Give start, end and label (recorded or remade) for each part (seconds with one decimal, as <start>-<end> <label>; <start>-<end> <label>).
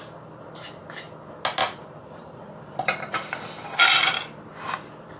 0.0-1.6 recorded; 1.6-4.7 remade; 4.7-5.2 recorded